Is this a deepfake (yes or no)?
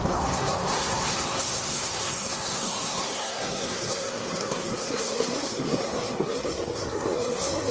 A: yes